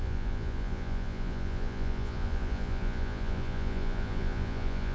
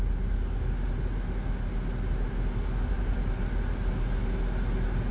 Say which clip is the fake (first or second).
first